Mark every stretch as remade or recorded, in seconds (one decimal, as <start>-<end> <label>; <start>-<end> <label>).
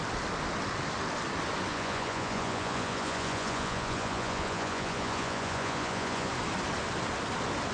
0.0-1.7 recorded; 1.7-6.3 remade; 6.3-7.7 recorded